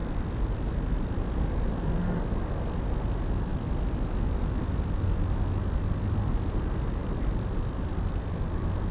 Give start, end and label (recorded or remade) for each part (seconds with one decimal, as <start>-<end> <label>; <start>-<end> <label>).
0.0-1.2 remade; 1.2-7.0 recorded; 7.0-8.1 remade; 8.1-8.9 recorded